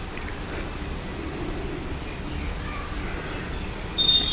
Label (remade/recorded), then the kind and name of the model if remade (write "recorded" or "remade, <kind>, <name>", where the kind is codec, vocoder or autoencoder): recorded